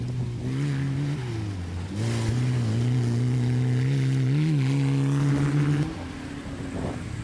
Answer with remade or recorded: recorded